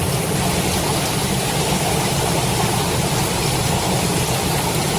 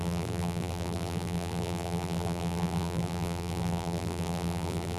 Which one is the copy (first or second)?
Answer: second